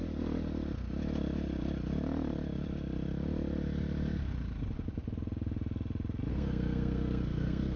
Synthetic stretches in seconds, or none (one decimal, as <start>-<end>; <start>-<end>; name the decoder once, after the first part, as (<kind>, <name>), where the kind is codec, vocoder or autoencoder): 6.3-7.8 (codec, SNAC)